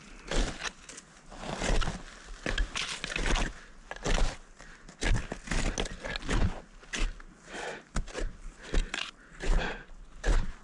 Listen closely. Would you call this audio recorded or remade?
recorded